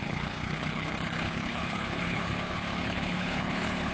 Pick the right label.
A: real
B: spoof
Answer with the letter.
B